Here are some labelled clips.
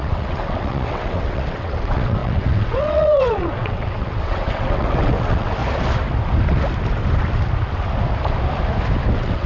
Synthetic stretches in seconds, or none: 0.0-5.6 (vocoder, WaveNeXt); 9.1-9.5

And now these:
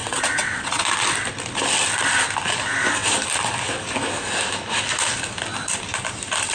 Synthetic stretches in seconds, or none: 0.0-0.8 (vocoder, WaveNeXt)

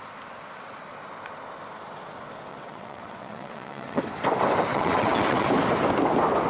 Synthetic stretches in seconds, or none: 2.5-4.0 (vocoder, WaveNeXt); 4.7-5.5

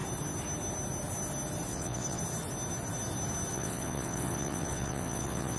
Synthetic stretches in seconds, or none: 1.7-2.2 (vocoder, WaveNeXt); 3.5-5.6